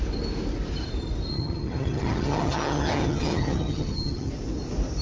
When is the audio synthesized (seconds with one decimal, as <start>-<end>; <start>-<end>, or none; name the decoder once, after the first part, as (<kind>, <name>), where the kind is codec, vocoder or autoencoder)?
1.3-4.3 (vocoder, HiFi-GAN)